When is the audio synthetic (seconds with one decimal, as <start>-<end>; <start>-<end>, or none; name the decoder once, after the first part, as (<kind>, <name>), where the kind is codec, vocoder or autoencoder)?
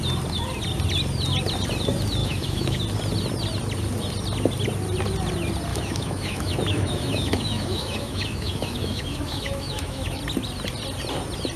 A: 2.2-2.8 (autoencoder, DAC-VAE); 5.7-10.2